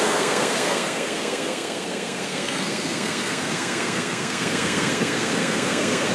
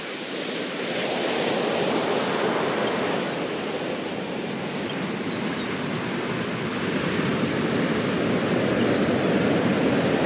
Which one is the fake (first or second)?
first